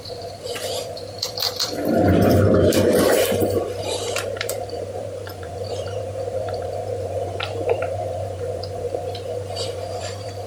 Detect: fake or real fake